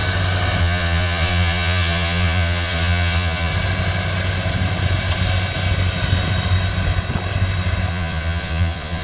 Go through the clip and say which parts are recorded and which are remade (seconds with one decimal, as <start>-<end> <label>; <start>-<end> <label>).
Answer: 0.0-0.6 recorded; 0.6-3.5 remade; 3.5-7.9 recorded; 7.9-9.0 remade